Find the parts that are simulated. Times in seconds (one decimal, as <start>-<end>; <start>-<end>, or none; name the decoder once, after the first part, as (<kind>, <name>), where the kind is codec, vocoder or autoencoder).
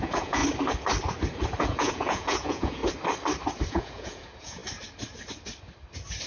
0.0-0.4 (vocoder, Vocos); 1.6-2.8; 3.7-4.6